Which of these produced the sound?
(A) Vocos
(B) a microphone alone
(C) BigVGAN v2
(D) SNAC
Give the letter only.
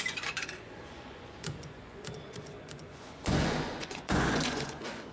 A